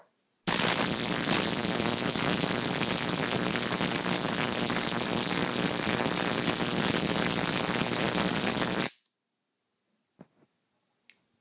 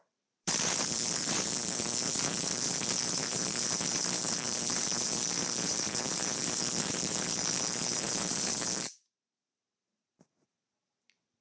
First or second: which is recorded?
first